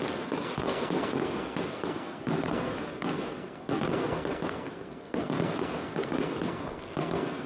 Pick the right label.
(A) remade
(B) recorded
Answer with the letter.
A